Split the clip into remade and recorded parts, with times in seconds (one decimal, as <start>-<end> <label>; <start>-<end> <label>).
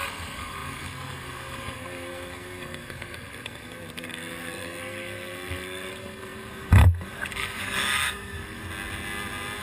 0.0-8.6 remade; 8.6-9.6 recorded